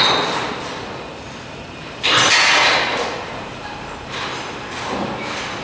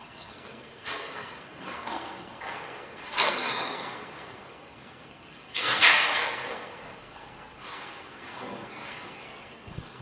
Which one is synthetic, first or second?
second